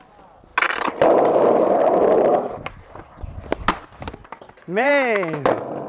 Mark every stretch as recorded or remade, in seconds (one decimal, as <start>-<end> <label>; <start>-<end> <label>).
0.0-4.2 recorded; 4.2-4.9 remade; 4.9-5.9 recorded